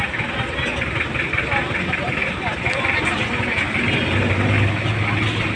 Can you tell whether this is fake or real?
real